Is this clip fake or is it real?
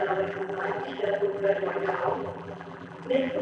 fake